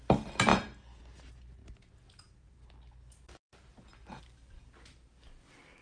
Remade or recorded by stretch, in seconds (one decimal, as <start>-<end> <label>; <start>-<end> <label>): 0.0-5.8 recorded

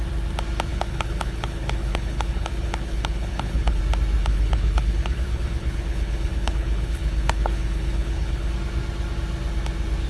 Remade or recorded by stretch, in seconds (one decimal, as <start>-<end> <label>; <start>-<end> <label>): 0.0-0.7 recorded; 0.7-3.8 remade; 3.8-4.2 recorded; 4.2-8.5 remade; 8.5-10.1 recorded

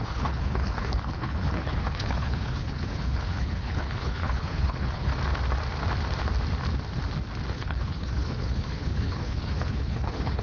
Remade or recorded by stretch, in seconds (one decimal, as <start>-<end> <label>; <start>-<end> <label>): 0.0-5.1 remade; 5.1-7.5 recorded; 7.5-10.4 remade

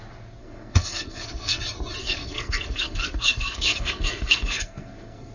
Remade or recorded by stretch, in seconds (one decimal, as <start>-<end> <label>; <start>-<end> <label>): 0.0-0.4 recorded; 0.4-1.6 remade; 1.6-2.0 recorded; 2.0-5.3 remade